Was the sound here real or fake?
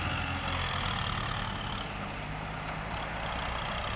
real